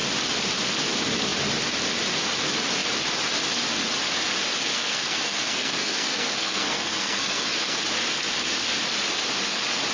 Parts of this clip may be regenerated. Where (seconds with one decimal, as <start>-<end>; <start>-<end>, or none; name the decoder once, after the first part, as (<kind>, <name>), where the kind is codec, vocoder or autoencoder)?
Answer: 4.7-7.8 (codec, SNAC)

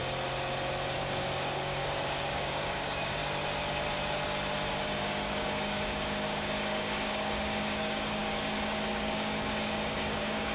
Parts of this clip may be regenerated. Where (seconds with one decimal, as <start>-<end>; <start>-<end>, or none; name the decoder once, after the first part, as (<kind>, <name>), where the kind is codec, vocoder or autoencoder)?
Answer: 0.9-3.2 (codec, DAC); 4.8-10.5

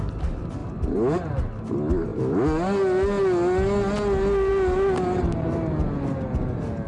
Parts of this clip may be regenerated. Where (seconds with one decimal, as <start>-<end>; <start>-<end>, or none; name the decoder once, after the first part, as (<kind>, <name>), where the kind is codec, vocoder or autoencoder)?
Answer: none

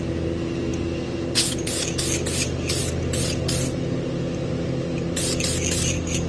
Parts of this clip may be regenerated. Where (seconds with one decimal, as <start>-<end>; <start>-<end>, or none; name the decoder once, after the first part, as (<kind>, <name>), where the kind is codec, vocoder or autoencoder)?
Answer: none

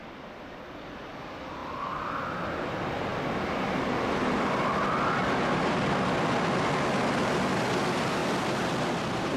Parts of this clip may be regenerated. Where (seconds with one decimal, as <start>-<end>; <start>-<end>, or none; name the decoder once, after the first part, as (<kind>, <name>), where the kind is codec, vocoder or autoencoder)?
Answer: none

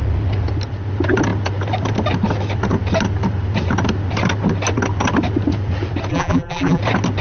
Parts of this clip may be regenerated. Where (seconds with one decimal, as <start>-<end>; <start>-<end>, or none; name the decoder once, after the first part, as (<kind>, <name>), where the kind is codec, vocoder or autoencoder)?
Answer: 6.1-6.8 (vocoder, BigVGAN v2)

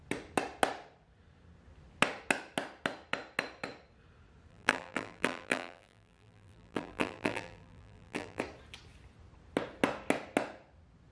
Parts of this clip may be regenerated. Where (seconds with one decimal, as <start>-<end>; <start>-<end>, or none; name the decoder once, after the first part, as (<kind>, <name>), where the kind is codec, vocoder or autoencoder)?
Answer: 4.5-8.4 (vocoder, BigVGAN v2)